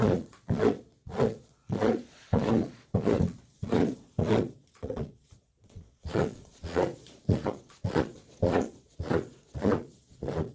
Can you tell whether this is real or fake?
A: fake